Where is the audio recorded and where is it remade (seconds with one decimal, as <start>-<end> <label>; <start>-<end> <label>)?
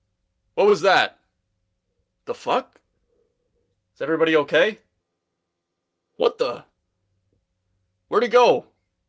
0.0-5.0 recorded; 5.0-6.4 remade; 6.4-9.1 recorded